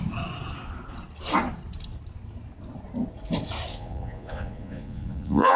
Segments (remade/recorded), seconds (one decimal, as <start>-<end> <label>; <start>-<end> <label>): 0.0-3.7 recorded; 3.7-5.6 remade